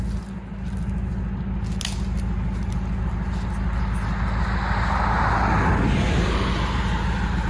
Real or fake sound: real